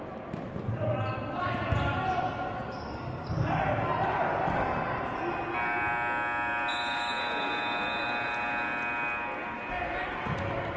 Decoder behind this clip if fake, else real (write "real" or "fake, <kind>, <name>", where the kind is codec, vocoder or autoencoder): real